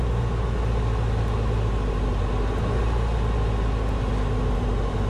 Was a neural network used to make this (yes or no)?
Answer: no